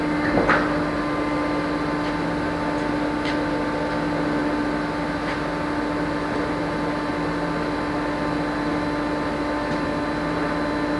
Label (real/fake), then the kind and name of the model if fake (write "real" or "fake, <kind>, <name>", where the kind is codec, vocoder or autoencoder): real